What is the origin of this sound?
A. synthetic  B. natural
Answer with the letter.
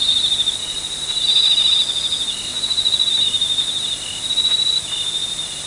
B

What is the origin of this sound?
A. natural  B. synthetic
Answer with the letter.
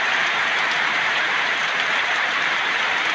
B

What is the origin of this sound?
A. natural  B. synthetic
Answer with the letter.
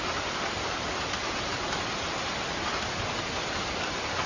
A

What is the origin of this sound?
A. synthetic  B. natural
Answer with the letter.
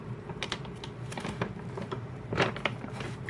A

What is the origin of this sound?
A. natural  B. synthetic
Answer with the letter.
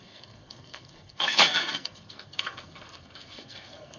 B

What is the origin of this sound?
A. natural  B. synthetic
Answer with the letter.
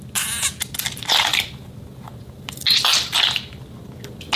A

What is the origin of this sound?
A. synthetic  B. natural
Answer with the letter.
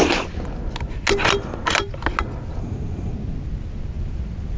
B